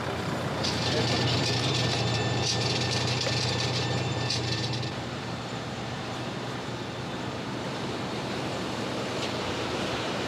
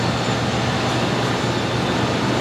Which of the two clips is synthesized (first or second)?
first